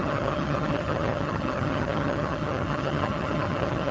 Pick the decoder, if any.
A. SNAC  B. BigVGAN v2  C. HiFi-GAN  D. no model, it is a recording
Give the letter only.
C